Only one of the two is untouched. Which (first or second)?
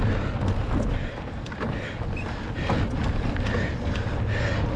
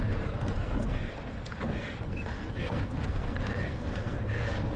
first